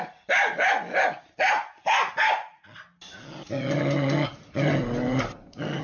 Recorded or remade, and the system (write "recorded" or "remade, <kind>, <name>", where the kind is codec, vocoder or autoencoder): recorded